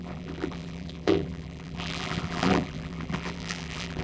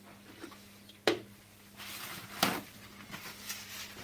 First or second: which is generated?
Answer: first